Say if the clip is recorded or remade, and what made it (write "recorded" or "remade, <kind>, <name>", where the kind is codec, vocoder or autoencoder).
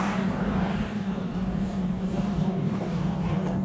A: remade, codec, DAC